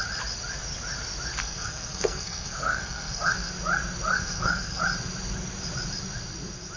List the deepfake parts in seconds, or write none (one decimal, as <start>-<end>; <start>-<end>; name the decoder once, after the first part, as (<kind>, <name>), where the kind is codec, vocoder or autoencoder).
1.4-3.5 (codec, SNAC); 4.1-4.8